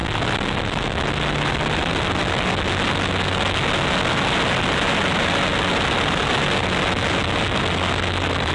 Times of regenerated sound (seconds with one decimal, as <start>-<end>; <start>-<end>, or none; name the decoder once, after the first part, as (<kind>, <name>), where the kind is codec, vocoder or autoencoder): none